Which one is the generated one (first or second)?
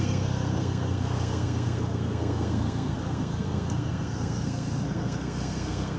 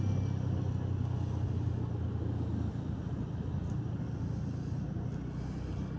first